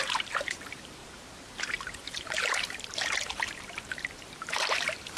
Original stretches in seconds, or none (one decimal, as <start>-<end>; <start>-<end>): none

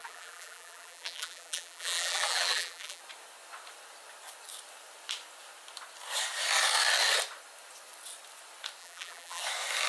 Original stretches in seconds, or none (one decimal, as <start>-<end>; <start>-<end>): 3.0-8.8; 9.4-9.9

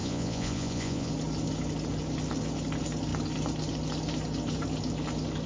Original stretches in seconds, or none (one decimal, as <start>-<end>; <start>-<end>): 1.1-5.5

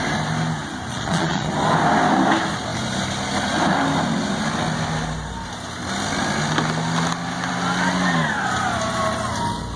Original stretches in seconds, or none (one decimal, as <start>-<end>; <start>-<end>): 0.0-0.9; 1.5-9.8

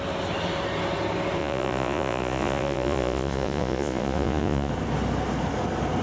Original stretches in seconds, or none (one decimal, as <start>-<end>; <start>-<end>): 0.0-1.4; 4.7-6.0

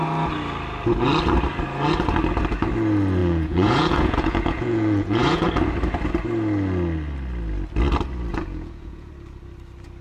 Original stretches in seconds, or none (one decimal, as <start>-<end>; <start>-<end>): 0.0-3.2; 5.5-8.3; 9.1-10.0